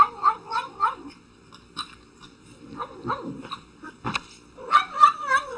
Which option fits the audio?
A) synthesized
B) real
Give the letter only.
A